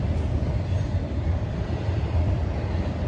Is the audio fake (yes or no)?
no